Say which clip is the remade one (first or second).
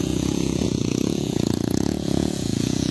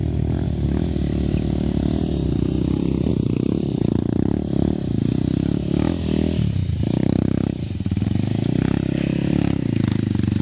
first